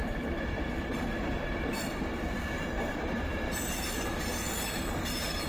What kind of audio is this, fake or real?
fake